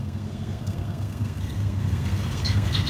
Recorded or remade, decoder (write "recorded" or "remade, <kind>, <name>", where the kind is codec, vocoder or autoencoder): remade, codec, SNAC